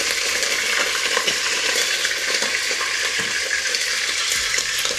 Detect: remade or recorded remade